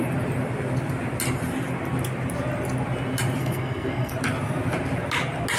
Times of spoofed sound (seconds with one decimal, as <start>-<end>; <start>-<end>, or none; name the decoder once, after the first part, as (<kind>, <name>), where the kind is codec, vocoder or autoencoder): 3.4-4.1 (codec, SNAC)